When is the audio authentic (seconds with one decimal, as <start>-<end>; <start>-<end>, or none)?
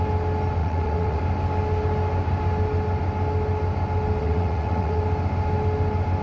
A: 0.0-0.6; 1.2-4.2; 5.0-6.2